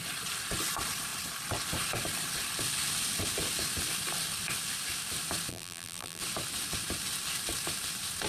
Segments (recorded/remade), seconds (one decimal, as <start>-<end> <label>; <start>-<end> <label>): 0.0-5.5 recorded; 5.5-6.2 remade; 6.2-8.3 recorded